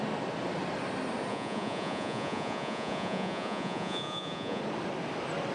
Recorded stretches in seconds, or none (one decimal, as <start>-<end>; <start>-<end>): 0.0-1.3; 4.6-5.5